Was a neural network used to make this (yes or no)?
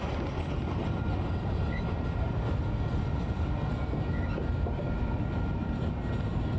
no